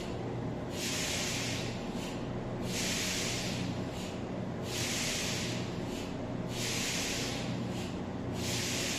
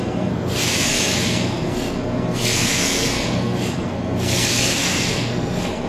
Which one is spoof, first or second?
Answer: second